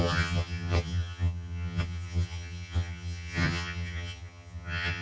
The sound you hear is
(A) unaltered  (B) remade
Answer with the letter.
B